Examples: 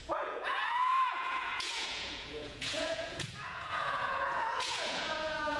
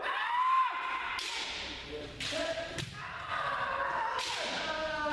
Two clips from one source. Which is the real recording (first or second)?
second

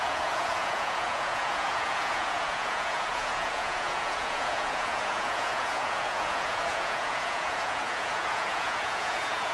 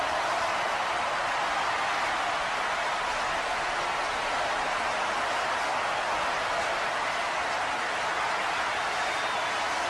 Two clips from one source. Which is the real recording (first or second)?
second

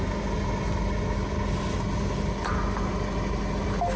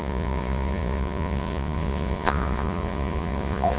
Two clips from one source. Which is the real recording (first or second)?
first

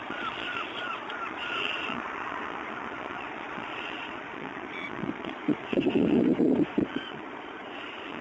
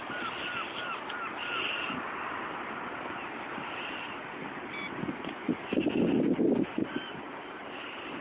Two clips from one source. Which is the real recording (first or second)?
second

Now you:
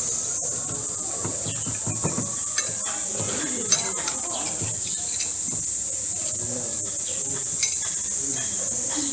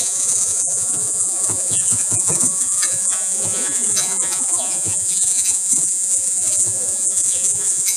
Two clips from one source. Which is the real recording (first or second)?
first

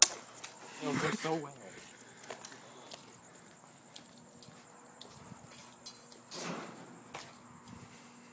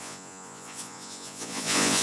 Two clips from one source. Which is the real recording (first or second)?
first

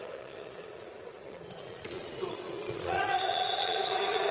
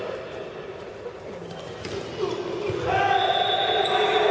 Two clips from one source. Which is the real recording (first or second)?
second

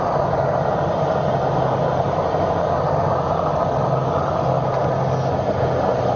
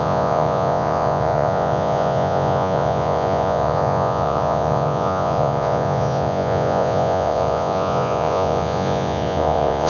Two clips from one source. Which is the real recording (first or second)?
first